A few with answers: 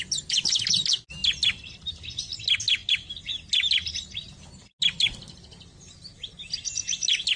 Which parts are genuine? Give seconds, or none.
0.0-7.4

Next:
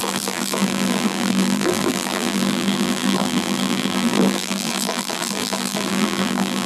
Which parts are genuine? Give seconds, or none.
none